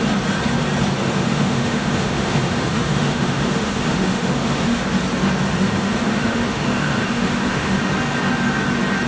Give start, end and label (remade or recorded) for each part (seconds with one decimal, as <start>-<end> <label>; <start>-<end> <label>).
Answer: 0.0-1.0 recorded; 1.0-4.8 remade; 4.8-5.6 recorded; 5.6-7.8 remade; 7.8-9.1 recorded